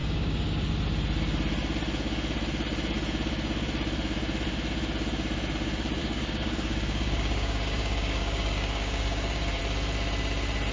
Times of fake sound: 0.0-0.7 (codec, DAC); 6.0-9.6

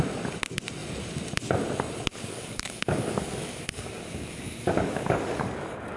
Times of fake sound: 2.1-6.0 (codec, DAC)

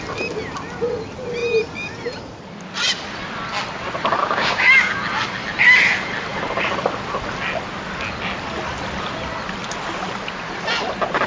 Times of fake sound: 4.2-4.9 (codec, DAC)

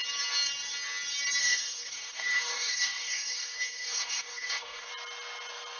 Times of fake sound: 1.4-4.9 (codec, DAC)